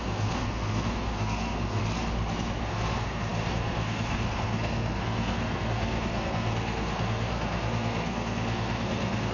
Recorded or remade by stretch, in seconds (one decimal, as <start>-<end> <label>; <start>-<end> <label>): 0.0-1.8 remade; 1.8-2.6 recorded; 2.6-9.3 remade